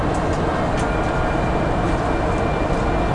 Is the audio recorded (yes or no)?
yes